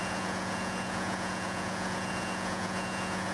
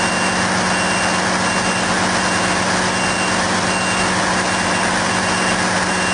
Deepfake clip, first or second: first